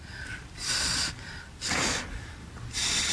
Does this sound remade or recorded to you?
recorded